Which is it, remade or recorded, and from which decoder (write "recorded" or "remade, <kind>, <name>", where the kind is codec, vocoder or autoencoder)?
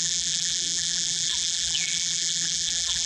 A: remade, vocoder, BigVGAN v2